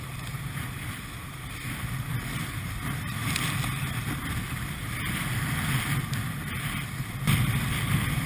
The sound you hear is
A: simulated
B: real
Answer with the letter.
B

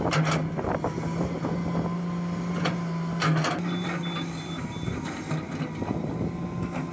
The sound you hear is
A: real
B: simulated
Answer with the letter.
A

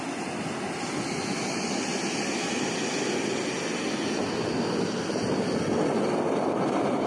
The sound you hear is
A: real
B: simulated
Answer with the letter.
A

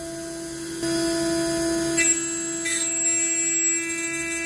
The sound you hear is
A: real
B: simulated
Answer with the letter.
A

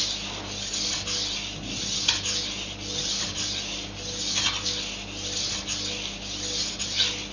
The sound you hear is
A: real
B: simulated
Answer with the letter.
A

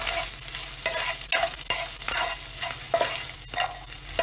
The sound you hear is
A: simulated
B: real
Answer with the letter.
B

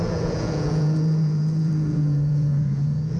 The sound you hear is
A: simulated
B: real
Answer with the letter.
A